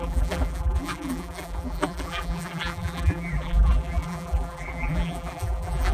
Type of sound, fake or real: fake